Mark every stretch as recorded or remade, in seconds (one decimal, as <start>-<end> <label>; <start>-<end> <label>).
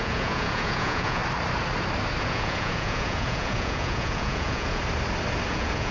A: 0.0-1.2 remade; 1.2-2.2 recorded; 2.2-4.8 remade; 4.8-5.5 recorded; 5.5-5.9 remade